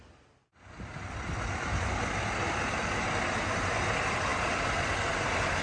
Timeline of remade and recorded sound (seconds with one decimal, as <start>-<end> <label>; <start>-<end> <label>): 0.0-5.6 recorded